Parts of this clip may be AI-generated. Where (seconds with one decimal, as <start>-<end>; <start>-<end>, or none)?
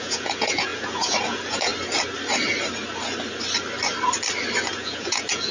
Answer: 0.0-1.7; 4.7-5.5